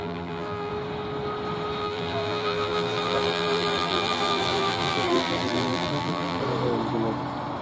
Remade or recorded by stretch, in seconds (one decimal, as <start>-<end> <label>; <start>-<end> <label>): 0.0-0.7 remade; 0.7-1.8 recorded; 1.8-6.4 remade; 6.4-7.6 recorded